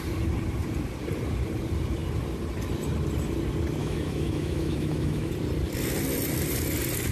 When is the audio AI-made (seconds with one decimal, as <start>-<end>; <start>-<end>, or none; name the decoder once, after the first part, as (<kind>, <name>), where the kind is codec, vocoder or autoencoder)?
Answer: 3.8-5.3 (autoencoder, DAC-VAE)